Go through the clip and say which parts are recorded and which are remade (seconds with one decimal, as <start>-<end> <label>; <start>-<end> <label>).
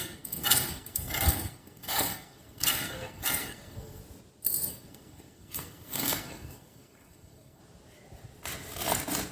0.0-4.0 remade; 4.0-4.7 recorded; 4.7-7.6 remade; 7.6-9.3 recorded